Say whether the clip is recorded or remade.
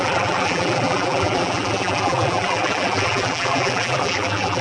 remade